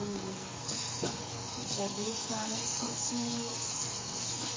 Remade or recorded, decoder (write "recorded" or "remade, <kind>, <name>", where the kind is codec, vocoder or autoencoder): remade, codec, SNAC